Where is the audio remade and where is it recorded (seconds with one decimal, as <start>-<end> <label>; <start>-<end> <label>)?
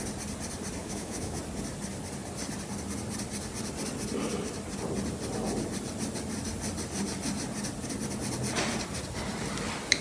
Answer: 0.0-0.8 recorded; 0.8-1.4 remade; 1.4-10.0 recorded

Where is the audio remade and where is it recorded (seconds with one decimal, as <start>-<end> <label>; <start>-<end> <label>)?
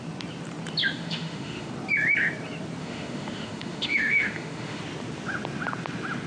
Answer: 0.0-0.8 recorded; 0.8-1.7 remade; 1.7-2.8 recorded; 2.8-4.8 remade; 4.8-6.3 recorded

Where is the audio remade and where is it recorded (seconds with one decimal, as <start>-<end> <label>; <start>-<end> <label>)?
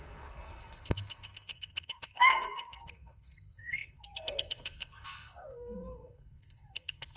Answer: 0.0-7.2 remade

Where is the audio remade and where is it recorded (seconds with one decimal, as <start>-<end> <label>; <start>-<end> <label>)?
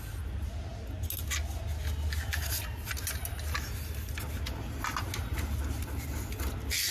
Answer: 0.0-6.9 recorded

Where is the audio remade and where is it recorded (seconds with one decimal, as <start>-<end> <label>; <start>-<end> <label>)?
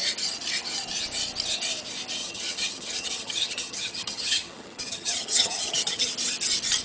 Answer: 0.0-2.2 recorded; 2.2-6.1 remade; 6.1-6.8 recorded